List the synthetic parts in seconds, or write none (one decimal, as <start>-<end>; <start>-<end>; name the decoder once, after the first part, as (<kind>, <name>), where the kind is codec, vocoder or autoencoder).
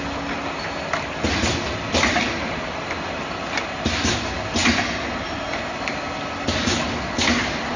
none